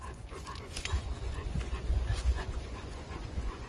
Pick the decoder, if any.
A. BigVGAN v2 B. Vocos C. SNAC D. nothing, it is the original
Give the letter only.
B